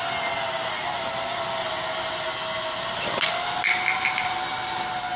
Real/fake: real